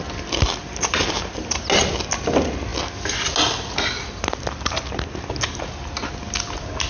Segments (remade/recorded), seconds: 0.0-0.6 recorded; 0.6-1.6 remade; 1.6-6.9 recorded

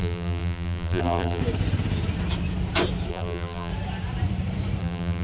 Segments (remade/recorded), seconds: 0.0-1.4 remade; 1.4-3.1 recorded; 3.1-3.7 remade; 3.7-4.8 recorded; 4.8-5.2 remade

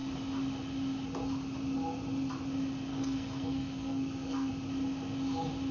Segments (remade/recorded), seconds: 0.0-2.9 recorded; 2.9-4.5 remade; 4.5-5.7 recorded

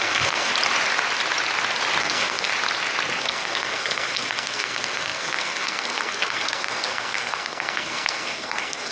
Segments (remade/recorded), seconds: 0.0-0.5 remade; 0.5-2.0 recorded; 2.0-2.5 remade; 2.5-3.2 recorded; 3.2-8.9 remade